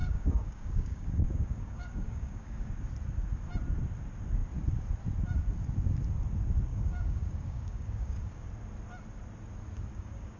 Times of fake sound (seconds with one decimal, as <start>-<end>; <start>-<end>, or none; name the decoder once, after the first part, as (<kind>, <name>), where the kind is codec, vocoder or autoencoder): 0.0-2.7 (codec, DAC); 6.7-8.5; 9.9-10.4